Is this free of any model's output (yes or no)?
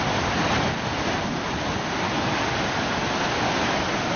yes